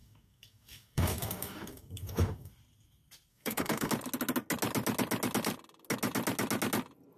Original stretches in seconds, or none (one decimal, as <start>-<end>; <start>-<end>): 2.5-3.3; 3.9-7.2